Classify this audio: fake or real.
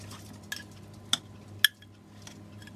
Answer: real